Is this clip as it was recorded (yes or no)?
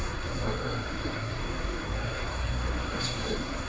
no